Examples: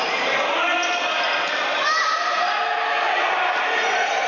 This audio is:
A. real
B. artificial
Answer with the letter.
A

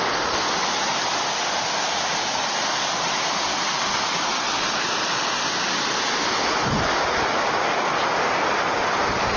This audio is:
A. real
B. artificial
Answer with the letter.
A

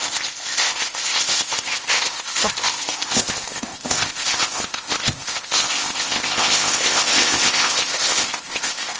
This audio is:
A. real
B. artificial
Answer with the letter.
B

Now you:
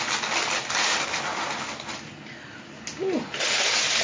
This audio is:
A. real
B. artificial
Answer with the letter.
A